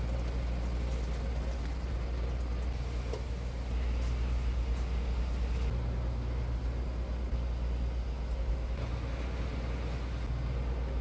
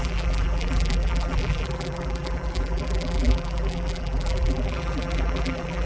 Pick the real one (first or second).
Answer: first